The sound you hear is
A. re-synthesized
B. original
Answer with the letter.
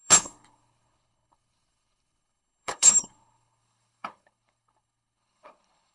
A